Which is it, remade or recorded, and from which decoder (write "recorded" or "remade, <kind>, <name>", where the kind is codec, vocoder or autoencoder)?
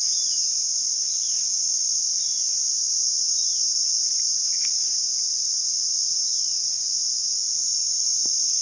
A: recorded